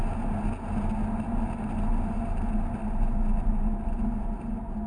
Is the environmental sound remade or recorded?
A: recorded